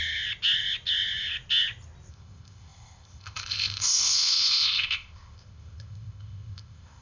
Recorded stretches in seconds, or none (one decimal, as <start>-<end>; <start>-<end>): 0.0-2.1